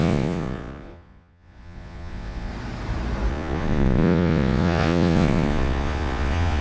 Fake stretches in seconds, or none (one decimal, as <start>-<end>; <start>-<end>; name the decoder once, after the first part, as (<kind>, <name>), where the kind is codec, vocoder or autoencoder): 0.0-2.5 (vocoder, Vocos); 3.3-6.6